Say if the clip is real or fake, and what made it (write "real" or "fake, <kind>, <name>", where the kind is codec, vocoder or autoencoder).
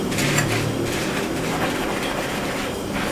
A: real